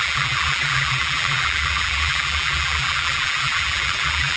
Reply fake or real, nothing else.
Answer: fake